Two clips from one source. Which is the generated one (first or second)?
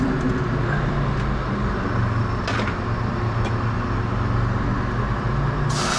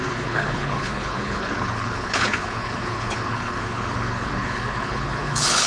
second